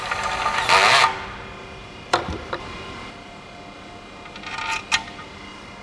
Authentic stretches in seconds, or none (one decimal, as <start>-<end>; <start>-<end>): 0.0-1.8; 3.5-5.8